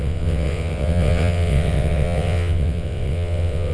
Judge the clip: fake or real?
fake